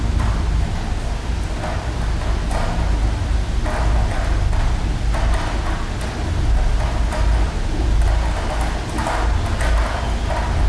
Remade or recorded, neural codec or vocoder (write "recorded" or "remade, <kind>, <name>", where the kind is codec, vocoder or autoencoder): recorded